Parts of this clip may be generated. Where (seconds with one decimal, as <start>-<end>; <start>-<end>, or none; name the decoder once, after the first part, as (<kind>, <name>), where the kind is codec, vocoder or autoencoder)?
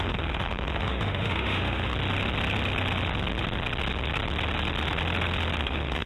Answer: 0.0-1.9 (autoencoder, DAC-VAE); 5.6-6.1